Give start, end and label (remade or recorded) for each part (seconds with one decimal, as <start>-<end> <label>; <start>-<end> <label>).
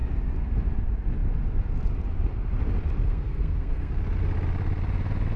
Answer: 0.0-3.1 recorded; 3.1-3.9 remade; 3.9-5.4 recorded